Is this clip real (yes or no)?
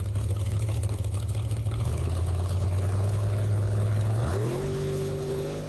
no